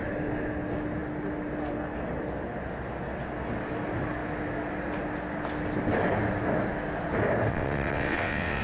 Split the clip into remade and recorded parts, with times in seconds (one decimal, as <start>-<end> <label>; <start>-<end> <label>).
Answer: 0.0-7.5 recorded; 7.5-8.6 remade